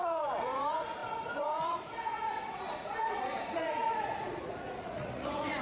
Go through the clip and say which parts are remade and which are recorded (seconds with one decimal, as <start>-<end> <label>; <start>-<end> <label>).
0.0-5.6 remade